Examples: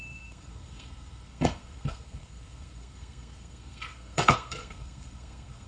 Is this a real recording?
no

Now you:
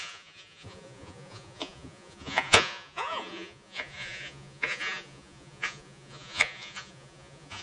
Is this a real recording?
no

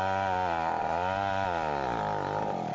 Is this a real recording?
yes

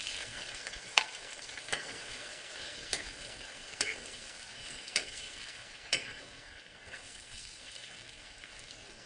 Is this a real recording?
no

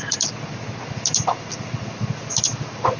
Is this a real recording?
yes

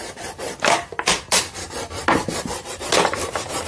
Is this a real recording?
no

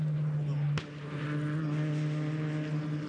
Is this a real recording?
yes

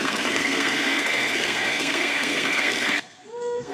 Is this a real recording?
no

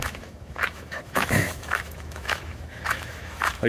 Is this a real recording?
no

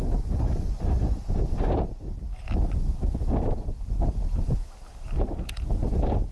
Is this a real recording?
yes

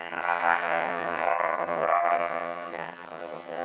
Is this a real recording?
no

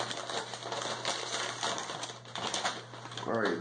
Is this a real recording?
yes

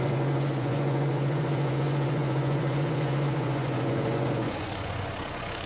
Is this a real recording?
no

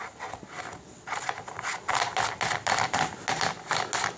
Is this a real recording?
yes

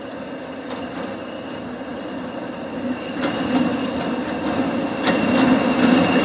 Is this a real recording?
yes